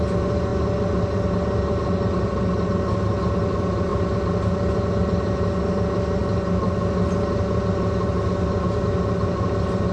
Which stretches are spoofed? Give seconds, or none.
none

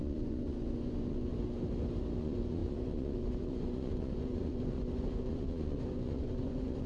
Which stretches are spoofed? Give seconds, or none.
0.0-1.3; 2.2-6.9

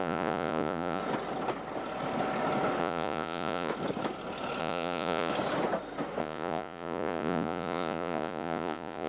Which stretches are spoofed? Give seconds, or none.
0.0-1.0; 2.8-3.7; 4.6-5.3; 6.2-9.1